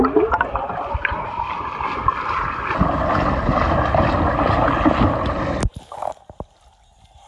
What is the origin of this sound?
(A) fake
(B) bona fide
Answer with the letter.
B